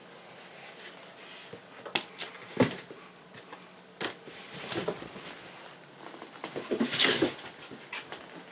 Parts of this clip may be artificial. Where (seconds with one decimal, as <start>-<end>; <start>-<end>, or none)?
none